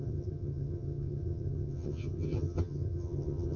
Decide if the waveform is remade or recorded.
remade